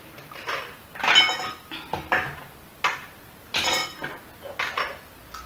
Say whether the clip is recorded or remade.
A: recorded